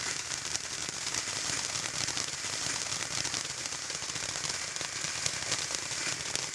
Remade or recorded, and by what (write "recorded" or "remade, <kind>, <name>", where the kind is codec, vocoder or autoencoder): recorded